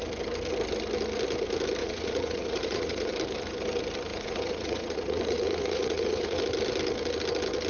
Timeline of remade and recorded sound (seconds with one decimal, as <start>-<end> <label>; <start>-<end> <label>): 0.0-1.8 recorded; 1.8-3.1 remade; 3.1-4.1 recorded; 4.1-6.4 remade; 6.4-7.7 recorded